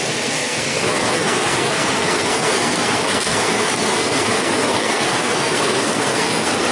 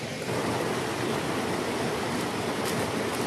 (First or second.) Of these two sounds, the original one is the second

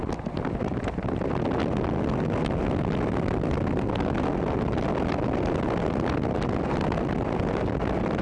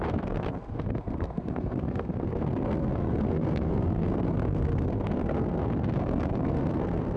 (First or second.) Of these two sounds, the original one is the first